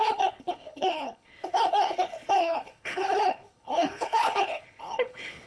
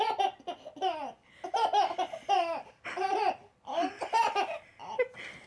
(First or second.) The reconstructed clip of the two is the first